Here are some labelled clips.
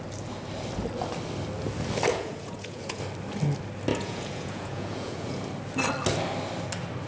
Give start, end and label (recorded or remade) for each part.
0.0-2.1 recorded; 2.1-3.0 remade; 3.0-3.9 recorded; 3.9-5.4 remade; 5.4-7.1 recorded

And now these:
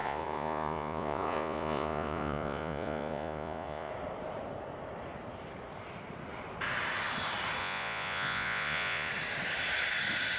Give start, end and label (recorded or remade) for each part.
0.0-3.9 remade; 3.9-7.6 recorded; 7.6-9.1 remade; 9.1-10.4 recorded